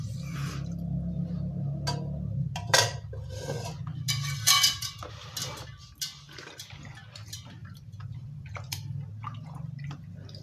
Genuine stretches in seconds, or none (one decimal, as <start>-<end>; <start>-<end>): 0.0-7.6; 9.1-10.4